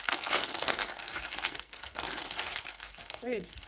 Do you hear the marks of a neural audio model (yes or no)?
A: yes